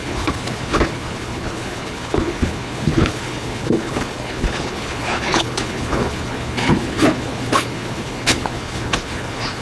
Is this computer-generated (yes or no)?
yes